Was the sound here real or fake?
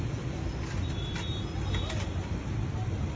real